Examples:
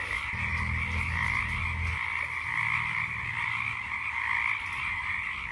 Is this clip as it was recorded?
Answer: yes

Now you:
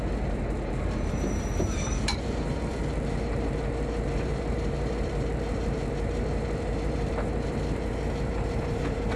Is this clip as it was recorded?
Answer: no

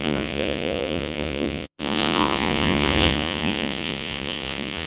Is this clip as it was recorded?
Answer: no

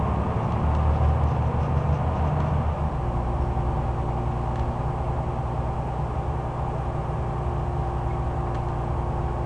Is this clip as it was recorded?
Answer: yes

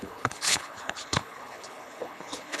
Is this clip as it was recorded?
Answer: no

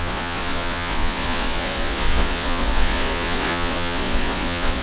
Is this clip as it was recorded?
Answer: no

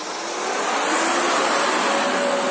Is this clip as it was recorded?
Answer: yes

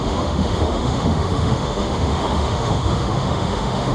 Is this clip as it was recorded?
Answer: no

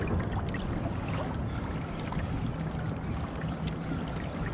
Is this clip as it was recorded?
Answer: yes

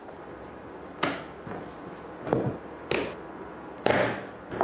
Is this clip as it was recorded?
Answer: yes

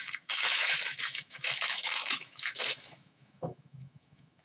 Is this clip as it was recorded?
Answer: no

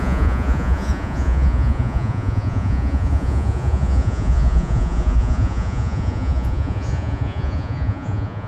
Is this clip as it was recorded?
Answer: no